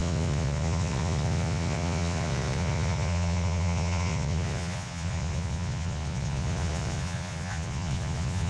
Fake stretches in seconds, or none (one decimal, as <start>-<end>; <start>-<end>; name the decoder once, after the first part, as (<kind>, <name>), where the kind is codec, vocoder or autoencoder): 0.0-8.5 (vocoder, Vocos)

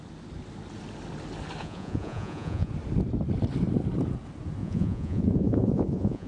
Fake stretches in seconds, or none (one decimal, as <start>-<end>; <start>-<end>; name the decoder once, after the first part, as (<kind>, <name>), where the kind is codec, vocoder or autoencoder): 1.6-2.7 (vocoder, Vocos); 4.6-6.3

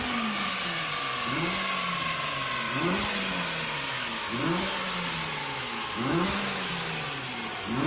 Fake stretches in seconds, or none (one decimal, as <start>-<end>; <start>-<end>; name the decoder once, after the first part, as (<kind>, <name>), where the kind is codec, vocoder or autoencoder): 3.9-4.4 (autoencoder, DAC-VAE); 5.4-6.7